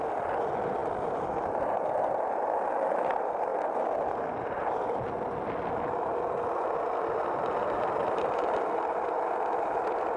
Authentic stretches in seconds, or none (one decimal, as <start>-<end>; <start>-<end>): none

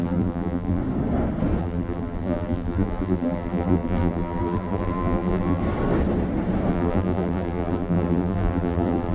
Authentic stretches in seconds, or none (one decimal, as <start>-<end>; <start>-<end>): 0.8-1.6; 5.6-6.7

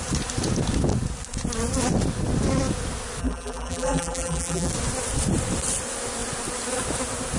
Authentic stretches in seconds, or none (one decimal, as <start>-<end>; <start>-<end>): 0.0-3.2; 4.7-7.4

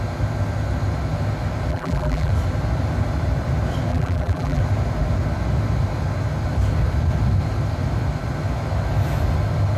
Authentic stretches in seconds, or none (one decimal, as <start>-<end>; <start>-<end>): 0.0-1.7; 2.3-3.9; 4.6-9.8

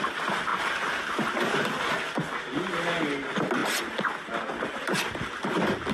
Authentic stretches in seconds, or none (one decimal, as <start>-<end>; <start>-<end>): 0.0-5.9

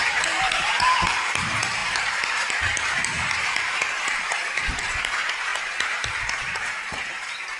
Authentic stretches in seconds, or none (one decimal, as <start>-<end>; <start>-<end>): none